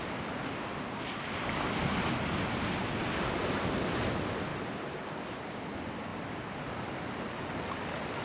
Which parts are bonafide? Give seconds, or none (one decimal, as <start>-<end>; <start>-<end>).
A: 0.0-4.5; 5.1-6.1; 6.6-8.2